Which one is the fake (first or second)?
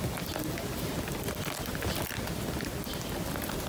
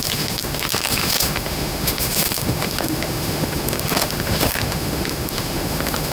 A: second